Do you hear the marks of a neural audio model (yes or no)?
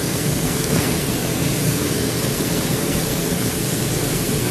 yes